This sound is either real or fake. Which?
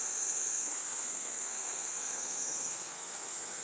fake